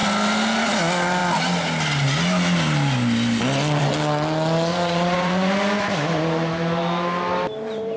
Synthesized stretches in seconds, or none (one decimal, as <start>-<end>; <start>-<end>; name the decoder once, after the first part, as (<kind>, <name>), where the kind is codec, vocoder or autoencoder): 4.7-5.5 (vocoder, Vocos)